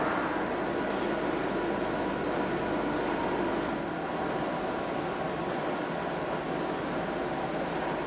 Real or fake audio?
real